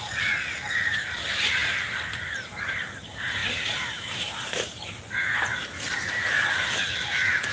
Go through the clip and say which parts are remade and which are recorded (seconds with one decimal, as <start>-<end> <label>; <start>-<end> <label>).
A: 0.0-3.4 recorded; 3.4-4.8 remade; 4.8-5.5 recorded; 5.5-6.2 remade; 6.2-7.5 recorded